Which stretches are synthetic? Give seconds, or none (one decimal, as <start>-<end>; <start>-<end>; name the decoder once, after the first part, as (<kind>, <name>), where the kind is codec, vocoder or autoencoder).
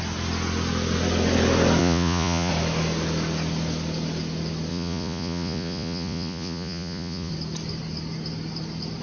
1.8-2.5 (vocoder, Vocos); 4.7-7.3